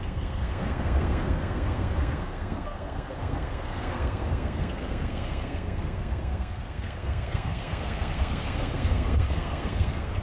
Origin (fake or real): fake